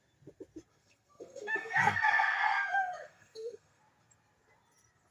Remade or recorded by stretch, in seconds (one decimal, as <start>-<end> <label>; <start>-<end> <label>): 0.0-0.7 recorded; 0.7-3.8 remade; 3.8-5.1 recorded